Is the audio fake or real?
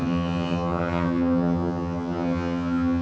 fake